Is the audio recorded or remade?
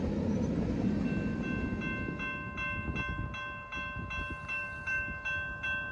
recorded